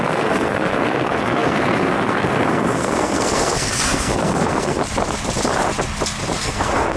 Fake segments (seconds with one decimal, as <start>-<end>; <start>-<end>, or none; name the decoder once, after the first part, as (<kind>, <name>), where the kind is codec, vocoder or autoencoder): 0.0-4.8 (codec, SNAC); 6.4-7.0